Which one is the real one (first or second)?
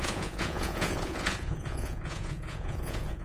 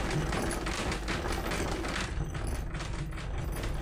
second